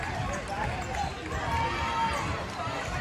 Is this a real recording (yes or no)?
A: yes